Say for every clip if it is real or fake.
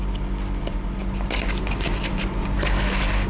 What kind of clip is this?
real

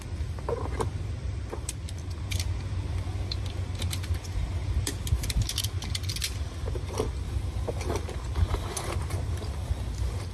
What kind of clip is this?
real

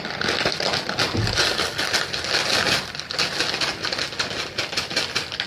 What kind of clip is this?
real